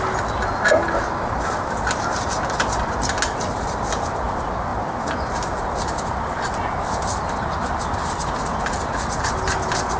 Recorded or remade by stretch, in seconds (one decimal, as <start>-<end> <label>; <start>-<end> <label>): 0.0-4.7 recorded; 4.7-9.5 remade; 9.5-10.0 recorded